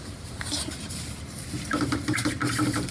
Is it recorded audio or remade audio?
remade